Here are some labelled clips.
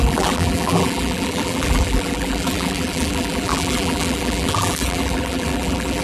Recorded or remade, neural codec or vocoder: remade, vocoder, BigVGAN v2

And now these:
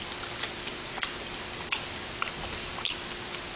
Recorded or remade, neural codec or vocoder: recorded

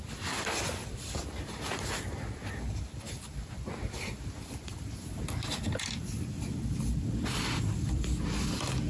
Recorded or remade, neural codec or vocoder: remade, vocoder, BigVGAN v2